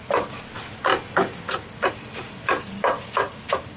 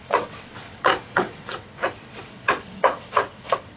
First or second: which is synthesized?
second